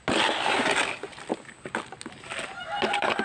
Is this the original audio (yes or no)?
yes